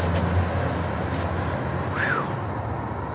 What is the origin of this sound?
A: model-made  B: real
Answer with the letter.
B